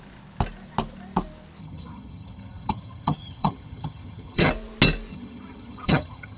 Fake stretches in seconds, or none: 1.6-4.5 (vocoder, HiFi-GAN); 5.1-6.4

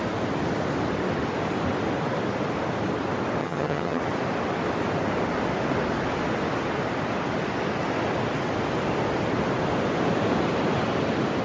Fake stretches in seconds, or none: 3.4-4.0 (vocoder, HiFi-GAN)

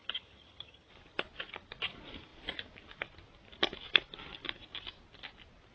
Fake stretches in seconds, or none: 0.0-0.9 (vocoder, HiFi-GAN)

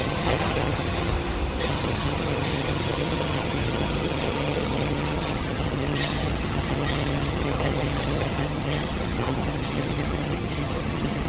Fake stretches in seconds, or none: 0.0-1.1 (vocoder, HiFi-GAN); 1.6-11.3

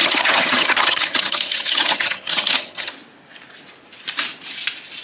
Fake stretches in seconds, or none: 0.0-2.9 (vocoder, HiFi-GAN)

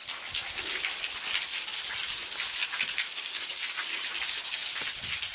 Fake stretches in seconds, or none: none